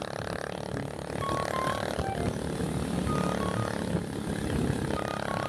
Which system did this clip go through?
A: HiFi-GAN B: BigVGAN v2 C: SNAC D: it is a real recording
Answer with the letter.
D